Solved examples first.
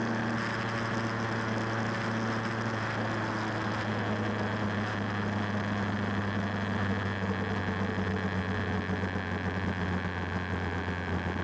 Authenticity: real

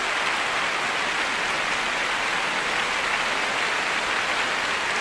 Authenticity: real